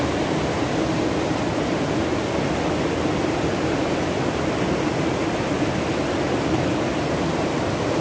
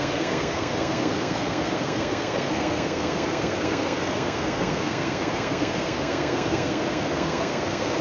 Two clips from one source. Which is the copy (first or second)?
second